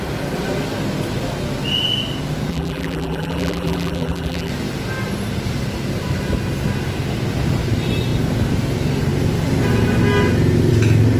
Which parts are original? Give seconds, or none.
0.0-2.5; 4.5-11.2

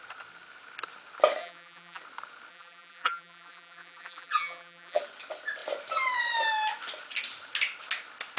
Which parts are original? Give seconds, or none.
0.0-1.4; 2.0-2.5; 5.0-8.4

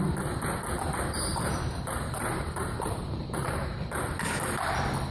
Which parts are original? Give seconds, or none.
0.0-1.3; 4.0-5.1

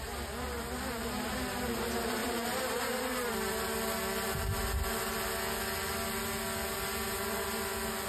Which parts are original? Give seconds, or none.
0.0-2.2; 3.3-8.1

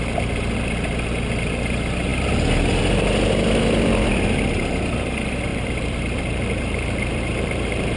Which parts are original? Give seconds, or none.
0.0-5.5

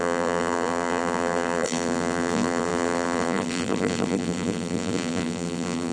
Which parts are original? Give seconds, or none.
none

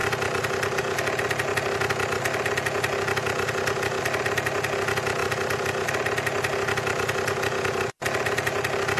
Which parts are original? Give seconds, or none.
0.0-5.2; 5.9-9.0